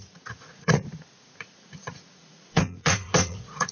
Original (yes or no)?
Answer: no